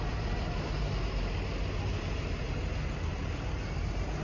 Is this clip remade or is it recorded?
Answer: recorded